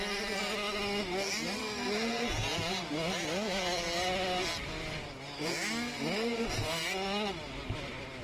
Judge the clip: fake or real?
real